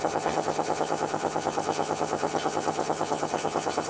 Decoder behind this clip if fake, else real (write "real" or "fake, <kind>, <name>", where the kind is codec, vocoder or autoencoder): fake, vocoder, HiFi-GAN